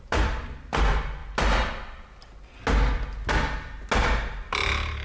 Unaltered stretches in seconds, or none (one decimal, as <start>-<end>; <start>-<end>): 1.2-4.0